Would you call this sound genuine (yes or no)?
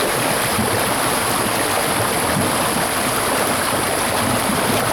yes